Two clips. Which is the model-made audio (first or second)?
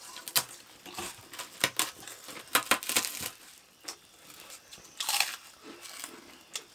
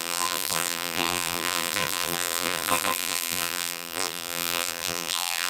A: second